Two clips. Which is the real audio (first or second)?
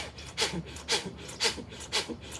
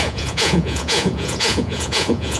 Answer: first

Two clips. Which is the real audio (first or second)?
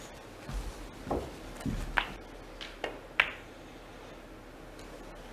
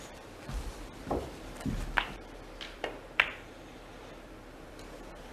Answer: first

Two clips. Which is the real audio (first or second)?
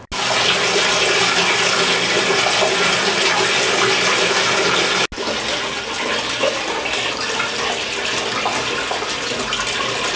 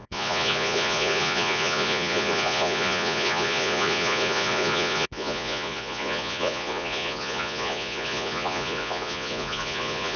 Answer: first